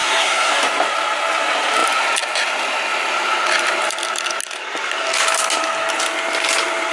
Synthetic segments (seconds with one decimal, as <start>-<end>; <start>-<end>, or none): 0.0-0.5